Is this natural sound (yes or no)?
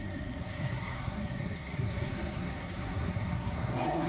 no